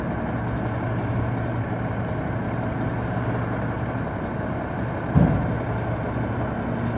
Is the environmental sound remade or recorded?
recorded